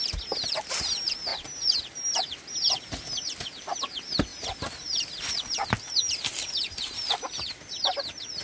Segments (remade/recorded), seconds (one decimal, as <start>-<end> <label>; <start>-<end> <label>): 0.0-8.4 recorded